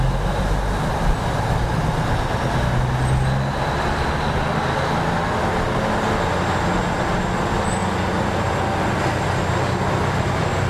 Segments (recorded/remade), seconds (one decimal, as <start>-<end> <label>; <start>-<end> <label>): 0.0-10.7 recorded